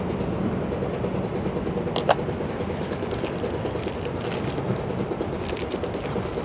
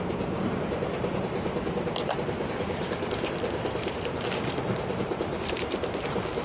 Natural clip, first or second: first